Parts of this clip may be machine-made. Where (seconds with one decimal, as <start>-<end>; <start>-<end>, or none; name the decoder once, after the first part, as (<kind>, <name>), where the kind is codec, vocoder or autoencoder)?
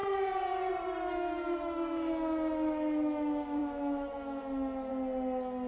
1.1-4.9 (autoencoder, DAC-VAE)